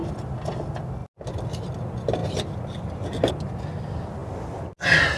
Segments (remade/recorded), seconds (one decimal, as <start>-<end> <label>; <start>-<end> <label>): 0.0-5.2 recorded